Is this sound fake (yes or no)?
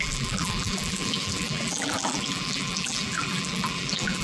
yes